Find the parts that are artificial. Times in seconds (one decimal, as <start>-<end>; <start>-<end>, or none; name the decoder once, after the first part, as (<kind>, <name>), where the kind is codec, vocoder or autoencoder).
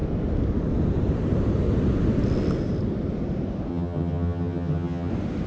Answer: 3.7-5.1 (vocoder, HiFi-GAN)